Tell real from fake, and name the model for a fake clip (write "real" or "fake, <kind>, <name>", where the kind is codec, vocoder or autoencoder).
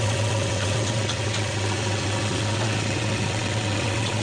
fake, vocoder, WaveNeXt